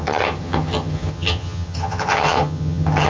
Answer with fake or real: fake